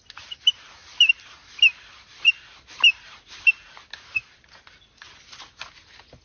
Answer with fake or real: real